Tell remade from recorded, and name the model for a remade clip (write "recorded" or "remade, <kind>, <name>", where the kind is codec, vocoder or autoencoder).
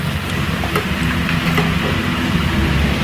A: recorded